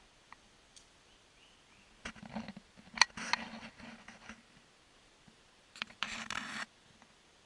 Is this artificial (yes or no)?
no